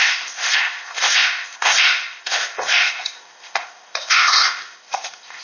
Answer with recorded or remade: remade